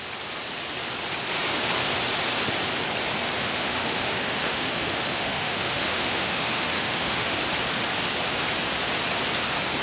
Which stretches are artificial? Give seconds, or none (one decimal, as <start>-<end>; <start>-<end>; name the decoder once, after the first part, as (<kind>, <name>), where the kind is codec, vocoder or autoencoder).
3.4-7.4 (autoencoder, DAC-VAE)